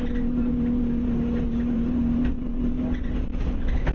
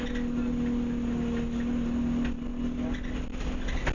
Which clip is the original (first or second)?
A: second